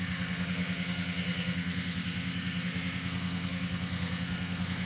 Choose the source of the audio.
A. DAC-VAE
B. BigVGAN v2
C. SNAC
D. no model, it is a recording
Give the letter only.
C